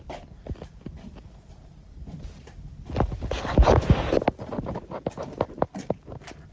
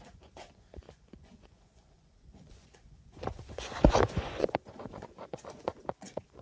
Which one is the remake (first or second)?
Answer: second